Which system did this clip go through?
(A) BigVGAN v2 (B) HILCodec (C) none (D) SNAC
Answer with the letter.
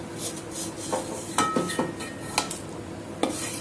C